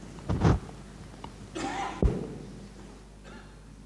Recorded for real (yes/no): yes